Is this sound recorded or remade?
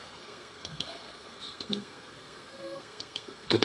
remade